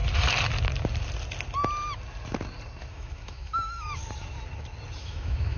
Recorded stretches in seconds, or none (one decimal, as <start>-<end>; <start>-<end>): 0.0-2.9; 4.0-5.0